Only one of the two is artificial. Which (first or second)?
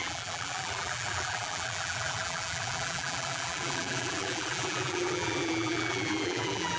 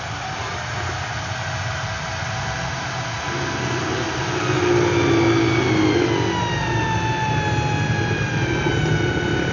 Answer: first